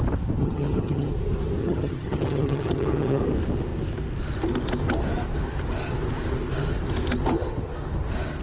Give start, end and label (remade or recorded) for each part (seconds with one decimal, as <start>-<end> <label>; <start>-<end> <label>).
0.0-0.4 recorded; 0.4-1.1 remade; 1.1-1.6 recorded; 1.6-3.2 remade; 3.2-8.4 recorded